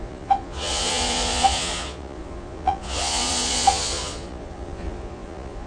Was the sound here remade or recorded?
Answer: remade